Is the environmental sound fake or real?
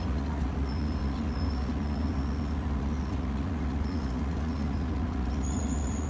fake